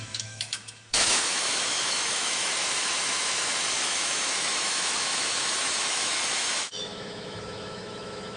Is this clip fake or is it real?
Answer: fake